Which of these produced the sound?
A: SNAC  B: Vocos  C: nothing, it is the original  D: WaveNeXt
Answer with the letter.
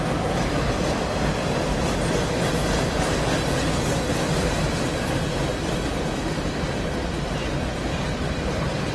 C